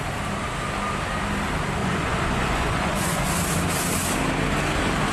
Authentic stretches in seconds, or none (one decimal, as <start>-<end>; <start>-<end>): 0.0-1.8; 3.3-5.1